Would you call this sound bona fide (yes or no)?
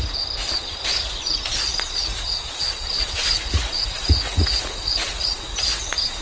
no